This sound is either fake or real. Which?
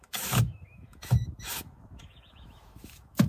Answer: fake